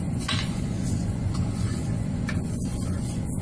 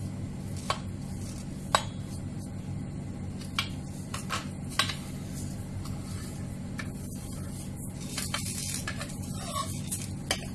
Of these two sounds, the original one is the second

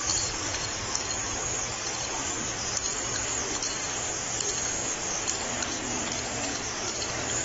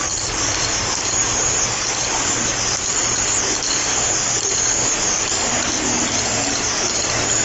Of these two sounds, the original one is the second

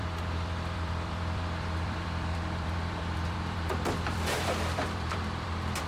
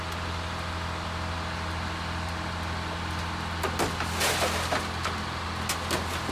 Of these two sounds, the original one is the second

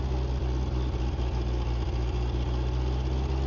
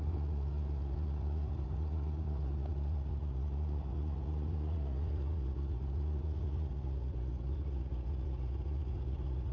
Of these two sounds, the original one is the first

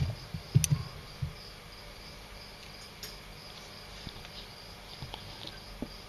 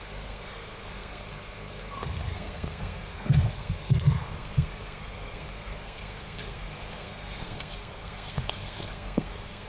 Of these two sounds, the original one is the first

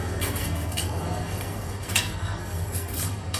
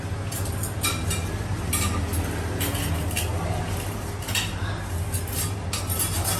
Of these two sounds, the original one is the second